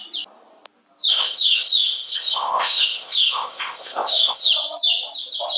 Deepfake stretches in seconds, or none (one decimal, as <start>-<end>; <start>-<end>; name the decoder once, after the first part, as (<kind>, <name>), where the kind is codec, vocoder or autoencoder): 1.1-4.5 (codec, ZipCodec)